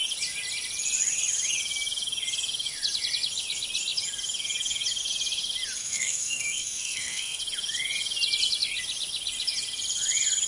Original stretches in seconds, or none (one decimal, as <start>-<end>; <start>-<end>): 0.0-5.8; 7.4-10.5